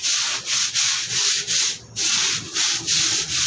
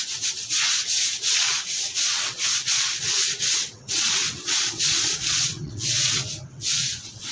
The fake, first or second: second